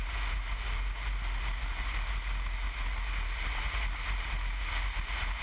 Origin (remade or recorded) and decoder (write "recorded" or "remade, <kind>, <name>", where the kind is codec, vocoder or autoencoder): recorded